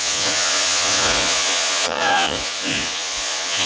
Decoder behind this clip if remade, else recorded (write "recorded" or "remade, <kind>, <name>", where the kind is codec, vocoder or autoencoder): remade, vocoder, Vocos